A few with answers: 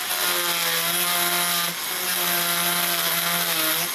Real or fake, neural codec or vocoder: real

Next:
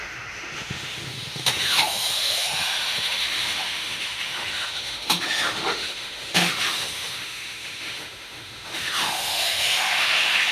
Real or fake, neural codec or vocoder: fake, autoencoder, DAC-VAE